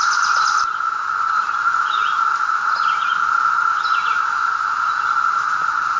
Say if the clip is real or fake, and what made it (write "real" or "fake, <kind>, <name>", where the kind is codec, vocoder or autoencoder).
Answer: real